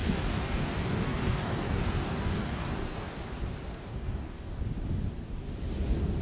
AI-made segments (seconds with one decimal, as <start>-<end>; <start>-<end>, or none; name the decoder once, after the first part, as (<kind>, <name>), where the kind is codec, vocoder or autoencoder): 0.0-3.2 (codec, DAC); 3.9-4.6